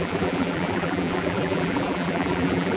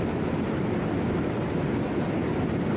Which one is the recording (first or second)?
second